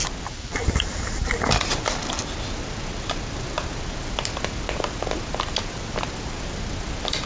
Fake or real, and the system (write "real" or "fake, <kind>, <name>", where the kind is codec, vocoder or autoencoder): real